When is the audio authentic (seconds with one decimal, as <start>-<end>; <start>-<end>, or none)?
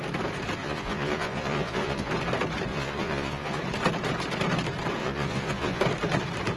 0.0-0.6; 2.1-2.7; 3.6-5.0; 5.8-6.6